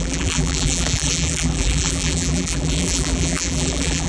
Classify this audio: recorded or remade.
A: remade